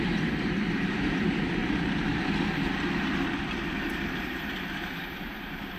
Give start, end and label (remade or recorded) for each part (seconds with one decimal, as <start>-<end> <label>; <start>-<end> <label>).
0.0-1.6 remade; 1.6-5.1 recorded; 5.1-5.8 remade